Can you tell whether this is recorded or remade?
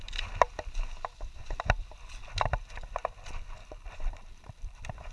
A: recorded